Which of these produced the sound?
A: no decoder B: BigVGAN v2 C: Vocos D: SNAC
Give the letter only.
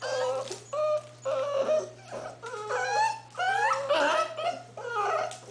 A